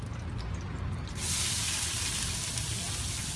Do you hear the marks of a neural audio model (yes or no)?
no